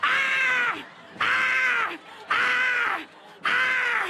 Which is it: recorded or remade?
remade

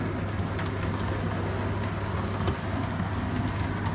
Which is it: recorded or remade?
recorded